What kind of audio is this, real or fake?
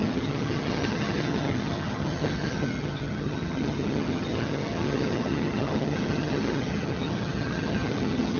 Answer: fake